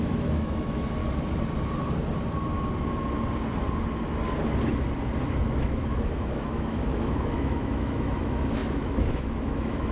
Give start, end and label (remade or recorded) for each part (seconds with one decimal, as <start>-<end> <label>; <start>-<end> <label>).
0.0-1.0 remade; 1.0-5.4 recorded; 5.4-9.9 remade